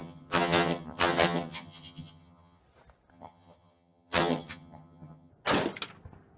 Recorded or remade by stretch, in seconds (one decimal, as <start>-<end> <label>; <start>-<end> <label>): 0.0-2.6 remade; 2.6-3.1 recorded; 3.1-5.3 remade; 5.3-6.4 recorded